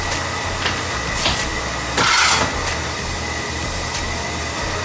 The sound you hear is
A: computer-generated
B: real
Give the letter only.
B